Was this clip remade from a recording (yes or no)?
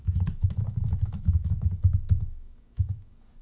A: yes